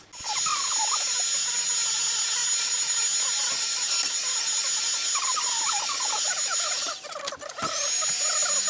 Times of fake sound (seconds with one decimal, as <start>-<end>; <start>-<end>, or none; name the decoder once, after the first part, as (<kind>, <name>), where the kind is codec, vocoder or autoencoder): none